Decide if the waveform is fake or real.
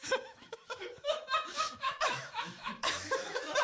fake